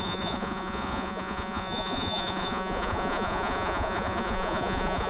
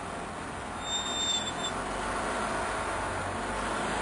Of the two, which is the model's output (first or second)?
first